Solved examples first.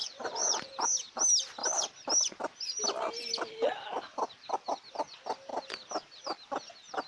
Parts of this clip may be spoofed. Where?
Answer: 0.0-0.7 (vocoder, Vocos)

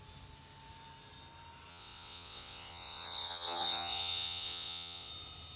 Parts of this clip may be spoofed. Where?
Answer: 1.7-5.1 (vocoder, WaveNeXt)

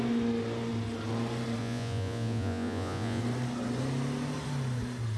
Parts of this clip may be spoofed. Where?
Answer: 1.6-3.2 (vocoder, Vocos)

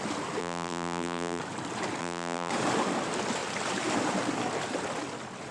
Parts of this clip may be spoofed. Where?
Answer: 0.4-1.4 (vocoder, BigVGAN v2); 2.0-2.5